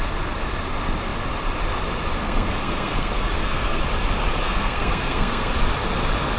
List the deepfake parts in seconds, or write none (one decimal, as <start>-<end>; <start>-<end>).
2.2-3.8; 4.4-5.5